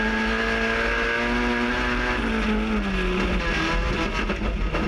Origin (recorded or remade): recorded